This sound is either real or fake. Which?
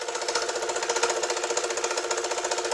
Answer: real